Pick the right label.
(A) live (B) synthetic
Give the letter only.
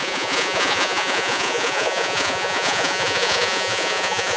B